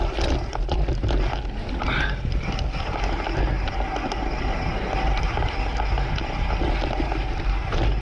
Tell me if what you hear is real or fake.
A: real